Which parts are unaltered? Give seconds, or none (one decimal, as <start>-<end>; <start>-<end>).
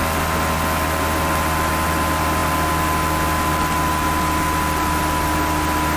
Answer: 0.0-6.0